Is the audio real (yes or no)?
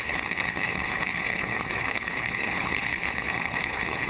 no